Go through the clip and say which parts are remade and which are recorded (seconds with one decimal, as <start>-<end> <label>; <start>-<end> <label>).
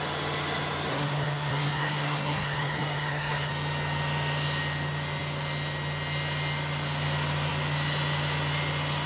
0.0-0.9 recorded; 0.9-3.5 remade; 3.5-9.1 recorded